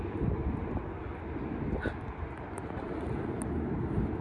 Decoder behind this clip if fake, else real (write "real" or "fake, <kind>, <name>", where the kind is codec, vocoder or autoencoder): real